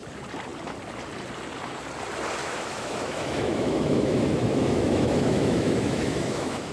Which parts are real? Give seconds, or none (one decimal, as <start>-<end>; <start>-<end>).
0.0-2.4